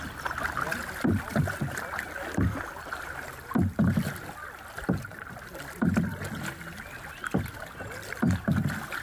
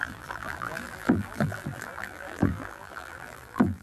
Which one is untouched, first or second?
first